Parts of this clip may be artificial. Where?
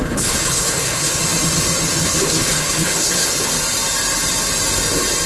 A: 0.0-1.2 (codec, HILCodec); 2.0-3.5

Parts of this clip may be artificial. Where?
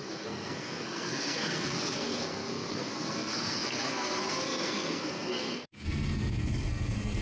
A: 0.0-7.2 (codec, SNAC)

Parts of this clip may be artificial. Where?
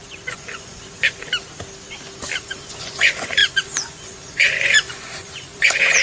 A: 0.0-1.3 (vocoder, Vocos); 2.4-6.0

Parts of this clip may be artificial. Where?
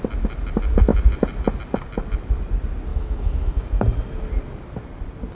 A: 2.9-3.5 (autoencoder, DAC-VAE)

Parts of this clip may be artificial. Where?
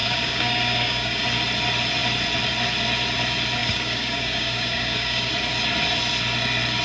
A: 0.0-1.2 (codec, DAC); 3.6-5.3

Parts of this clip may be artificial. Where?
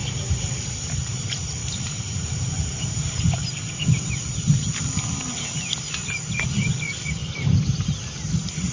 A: 0.0-0.7 (vocoder, BigVGAN v2); 1.6-3.2; 7.2-7.7